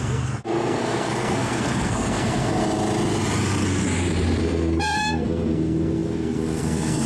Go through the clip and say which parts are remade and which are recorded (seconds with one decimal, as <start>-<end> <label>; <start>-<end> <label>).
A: 0.0-2.6 remade; 2.6-4.4 recorded; 4.4-7.1 remade